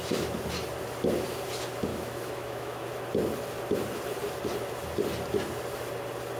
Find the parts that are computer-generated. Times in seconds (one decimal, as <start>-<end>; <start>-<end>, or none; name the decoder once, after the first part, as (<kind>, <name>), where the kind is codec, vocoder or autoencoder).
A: 1.9-2.9 (autoencoder, DAC-VAE)